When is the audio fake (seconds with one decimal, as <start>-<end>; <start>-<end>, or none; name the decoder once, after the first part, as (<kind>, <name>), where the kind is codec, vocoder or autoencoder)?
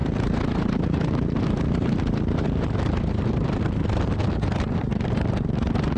0.0-3.6 (vocoder, BigVGAN v2); 4.8-5.3